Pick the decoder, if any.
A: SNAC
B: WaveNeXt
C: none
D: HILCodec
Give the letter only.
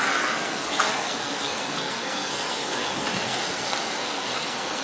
A